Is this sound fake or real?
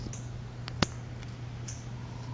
real